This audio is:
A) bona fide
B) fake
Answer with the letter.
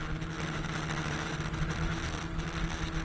A